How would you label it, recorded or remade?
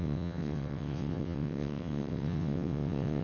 remade